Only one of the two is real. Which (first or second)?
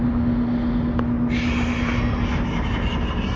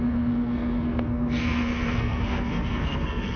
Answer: first